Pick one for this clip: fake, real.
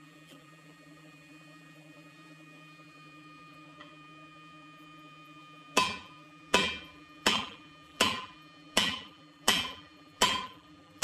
fake